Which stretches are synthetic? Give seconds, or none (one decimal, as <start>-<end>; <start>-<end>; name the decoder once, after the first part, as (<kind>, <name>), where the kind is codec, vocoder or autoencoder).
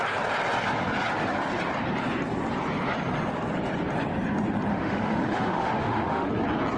4.7-6.3 (autoencoder, DAC-VAE)